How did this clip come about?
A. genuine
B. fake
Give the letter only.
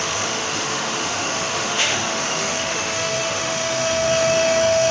B